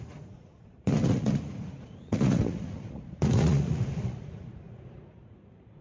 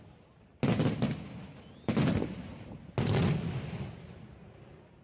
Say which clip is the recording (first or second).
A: second